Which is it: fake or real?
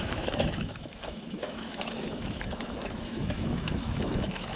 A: fake